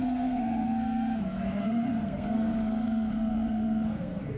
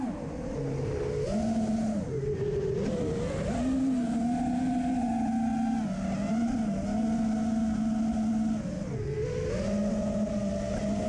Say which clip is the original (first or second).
second